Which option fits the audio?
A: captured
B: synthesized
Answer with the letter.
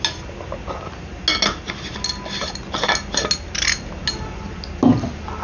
A